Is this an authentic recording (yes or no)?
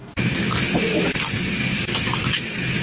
yes